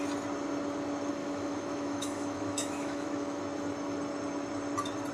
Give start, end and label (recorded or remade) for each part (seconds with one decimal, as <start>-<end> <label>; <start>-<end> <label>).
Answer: 0.0-1.2 recorded; 1.2-3.4 remade; 3.4-5.1 recorded